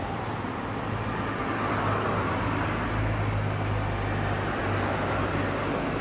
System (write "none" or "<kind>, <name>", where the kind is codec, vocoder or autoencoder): none